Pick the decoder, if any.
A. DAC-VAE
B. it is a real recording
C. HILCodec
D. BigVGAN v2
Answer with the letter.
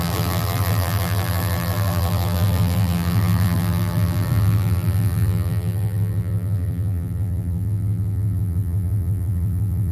D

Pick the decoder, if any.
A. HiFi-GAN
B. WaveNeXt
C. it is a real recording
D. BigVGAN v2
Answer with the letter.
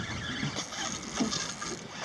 C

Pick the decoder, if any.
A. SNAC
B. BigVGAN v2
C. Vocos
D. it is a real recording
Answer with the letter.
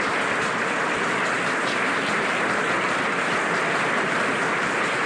D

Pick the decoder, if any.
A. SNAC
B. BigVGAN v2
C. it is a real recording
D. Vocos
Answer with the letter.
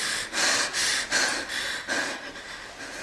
C